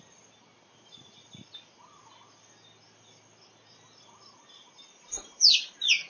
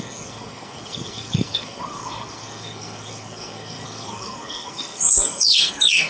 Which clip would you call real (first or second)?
first